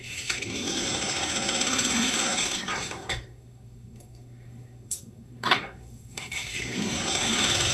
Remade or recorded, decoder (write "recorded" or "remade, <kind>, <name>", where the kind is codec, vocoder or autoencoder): remade, codec, SNAC